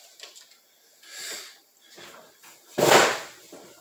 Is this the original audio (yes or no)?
yes